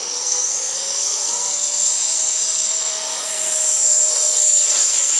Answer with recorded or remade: remade